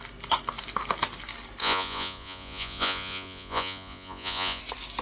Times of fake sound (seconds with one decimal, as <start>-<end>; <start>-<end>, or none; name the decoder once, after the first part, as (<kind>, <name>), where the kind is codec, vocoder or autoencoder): 1.6-4.6 (vocoder, Vocos)

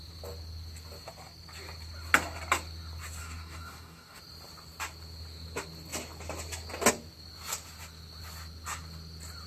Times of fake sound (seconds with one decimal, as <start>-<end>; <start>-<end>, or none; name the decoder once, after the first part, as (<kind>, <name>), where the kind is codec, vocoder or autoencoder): 3.2-4.2 (codec, DAC)

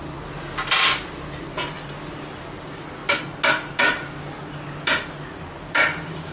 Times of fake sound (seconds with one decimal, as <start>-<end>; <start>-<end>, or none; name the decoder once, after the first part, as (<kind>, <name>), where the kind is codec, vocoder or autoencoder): none

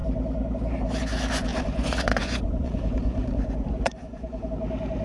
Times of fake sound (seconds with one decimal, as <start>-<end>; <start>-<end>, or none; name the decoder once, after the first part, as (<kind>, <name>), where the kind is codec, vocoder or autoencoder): 1.5-4.5 (vocoder, Vocos)